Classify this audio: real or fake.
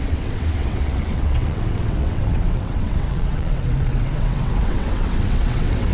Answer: fake